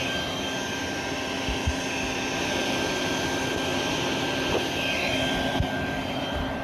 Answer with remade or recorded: recorded